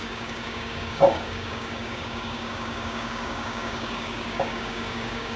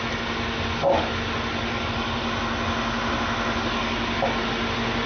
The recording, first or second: second